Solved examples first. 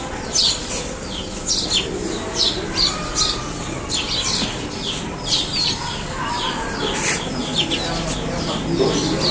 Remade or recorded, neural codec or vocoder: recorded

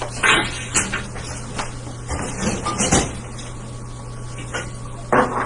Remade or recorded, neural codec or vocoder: recorded